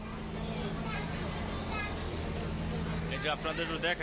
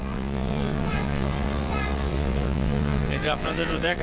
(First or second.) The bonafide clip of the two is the first